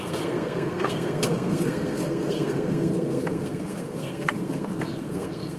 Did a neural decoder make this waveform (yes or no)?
yes